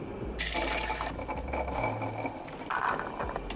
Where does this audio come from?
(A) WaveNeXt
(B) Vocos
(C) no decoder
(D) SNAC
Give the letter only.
C